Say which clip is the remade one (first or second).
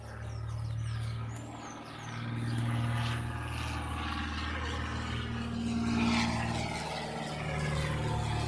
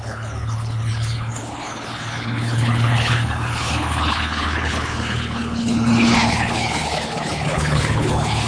second